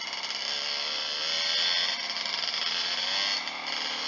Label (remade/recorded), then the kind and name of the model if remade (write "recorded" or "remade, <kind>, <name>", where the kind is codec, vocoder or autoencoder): recorded